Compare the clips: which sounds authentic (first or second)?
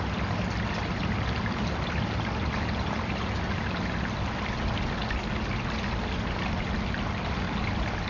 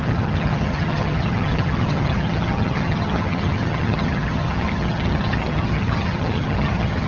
first